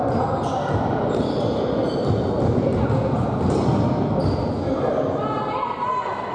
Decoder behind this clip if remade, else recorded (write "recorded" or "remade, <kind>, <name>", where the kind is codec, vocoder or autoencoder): recorded